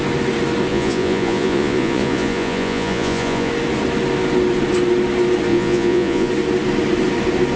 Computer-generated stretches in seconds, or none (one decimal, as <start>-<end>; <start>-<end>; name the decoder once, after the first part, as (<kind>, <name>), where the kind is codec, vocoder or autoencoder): 0.7-3.5 (vocoder, Vocos); 5.5-6.3